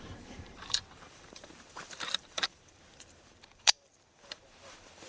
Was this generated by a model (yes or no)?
yes